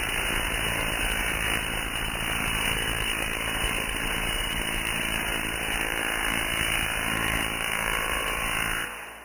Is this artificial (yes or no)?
yes